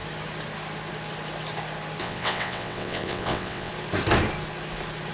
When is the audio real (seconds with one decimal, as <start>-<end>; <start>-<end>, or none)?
0.0-2.0; 3.7-5.1